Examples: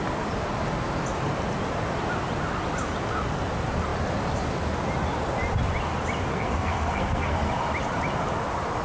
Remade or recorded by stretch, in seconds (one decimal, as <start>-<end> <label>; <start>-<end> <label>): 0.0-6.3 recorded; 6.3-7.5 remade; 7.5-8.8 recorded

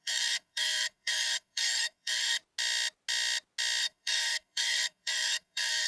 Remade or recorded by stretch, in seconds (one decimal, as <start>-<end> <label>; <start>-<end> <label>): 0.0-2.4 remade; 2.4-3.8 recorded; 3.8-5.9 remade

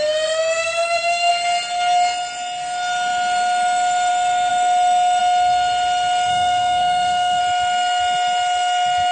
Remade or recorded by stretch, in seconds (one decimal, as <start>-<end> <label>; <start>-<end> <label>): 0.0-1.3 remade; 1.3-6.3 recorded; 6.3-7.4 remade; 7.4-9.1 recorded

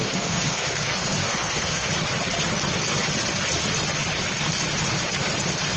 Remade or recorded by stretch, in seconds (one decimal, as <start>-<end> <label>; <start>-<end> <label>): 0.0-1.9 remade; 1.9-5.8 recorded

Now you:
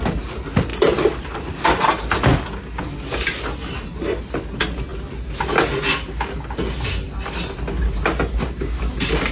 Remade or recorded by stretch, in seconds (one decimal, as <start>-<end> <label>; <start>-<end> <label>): 0.0-9.3 recorded